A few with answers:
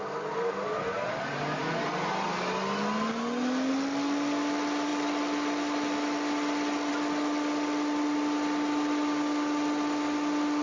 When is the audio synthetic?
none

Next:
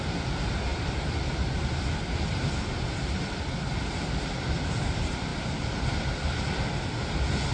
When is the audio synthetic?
none